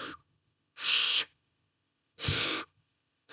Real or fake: fake